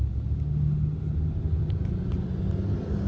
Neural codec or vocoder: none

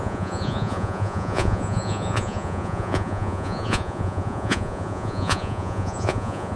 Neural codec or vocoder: vocoder, Vocos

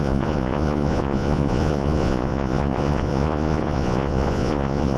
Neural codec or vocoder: vocoder, Vocos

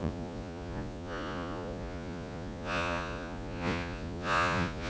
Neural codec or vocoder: vocoder, Vocos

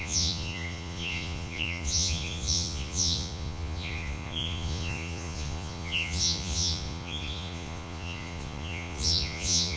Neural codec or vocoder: vocoder, Vocos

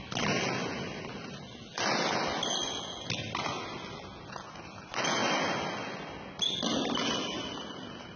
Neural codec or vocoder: none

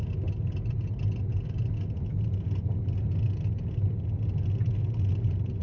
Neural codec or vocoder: none